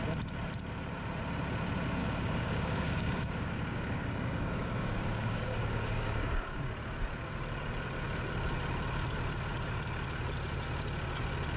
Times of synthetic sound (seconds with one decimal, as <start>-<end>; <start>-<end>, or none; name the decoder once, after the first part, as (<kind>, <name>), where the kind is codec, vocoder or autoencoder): 2.0-6.6 (codec, DAC)